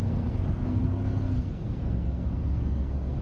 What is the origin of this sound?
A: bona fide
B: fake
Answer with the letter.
B